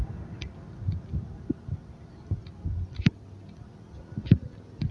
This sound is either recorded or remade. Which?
recorded